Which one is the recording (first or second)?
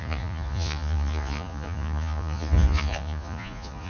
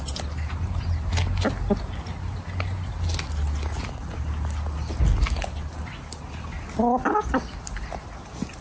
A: second